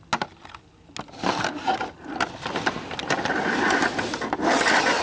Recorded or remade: recorded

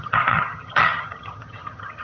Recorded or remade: remade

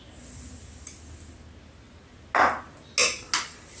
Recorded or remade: recorded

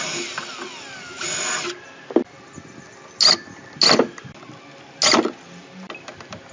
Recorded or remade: recorded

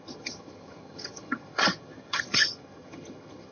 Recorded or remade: remade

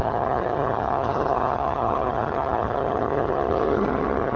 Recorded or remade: remade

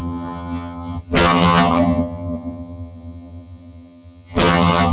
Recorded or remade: remade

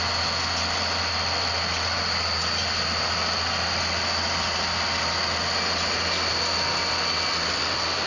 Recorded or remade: recorded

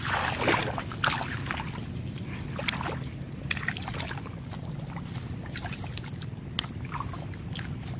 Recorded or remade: recorded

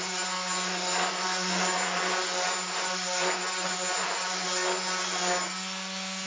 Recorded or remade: recorded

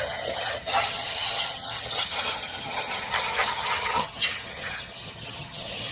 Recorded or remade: remade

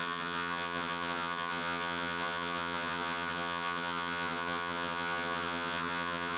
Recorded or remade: remade